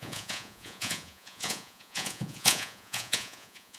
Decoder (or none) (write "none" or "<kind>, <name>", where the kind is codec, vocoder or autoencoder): vocoder, Vocos